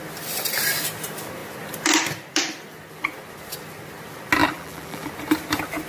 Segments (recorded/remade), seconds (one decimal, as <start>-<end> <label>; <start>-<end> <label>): 0.0-4.4 recorded; 4.4-5.1 remade; 5.1-5.9 recorded